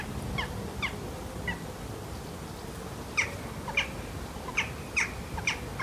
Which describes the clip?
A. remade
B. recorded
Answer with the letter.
B